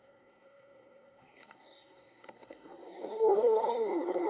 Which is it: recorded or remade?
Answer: remade